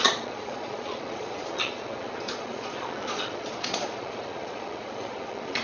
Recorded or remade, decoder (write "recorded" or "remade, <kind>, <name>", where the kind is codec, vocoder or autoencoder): remade, vocoder, Vocos